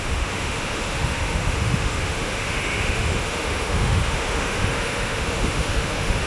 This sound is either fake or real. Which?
fake